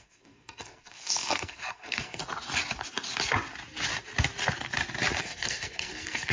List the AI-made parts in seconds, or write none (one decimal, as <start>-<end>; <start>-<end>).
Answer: 0.0-2.2; 5.2-6.3